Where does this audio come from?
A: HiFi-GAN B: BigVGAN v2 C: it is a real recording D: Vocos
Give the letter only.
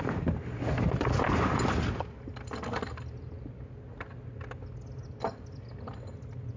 C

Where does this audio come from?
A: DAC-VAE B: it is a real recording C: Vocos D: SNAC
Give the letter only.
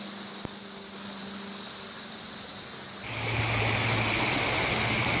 B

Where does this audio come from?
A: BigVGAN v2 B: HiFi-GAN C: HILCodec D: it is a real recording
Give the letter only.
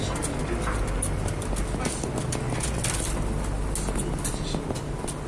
D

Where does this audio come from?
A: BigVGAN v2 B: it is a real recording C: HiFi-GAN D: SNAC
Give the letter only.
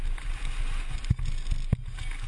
B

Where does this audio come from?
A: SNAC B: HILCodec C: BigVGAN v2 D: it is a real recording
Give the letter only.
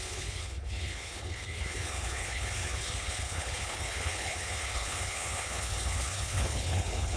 B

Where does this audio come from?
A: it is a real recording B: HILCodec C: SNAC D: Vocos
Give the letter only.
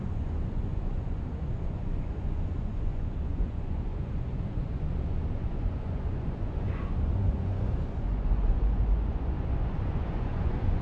D